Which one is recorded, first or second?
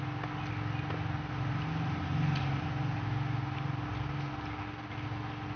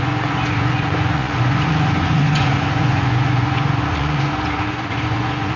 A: first